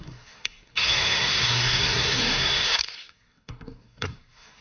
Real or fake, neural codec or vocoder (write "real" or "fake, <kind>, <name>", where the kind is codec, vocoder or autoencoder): fake, codec, SNAC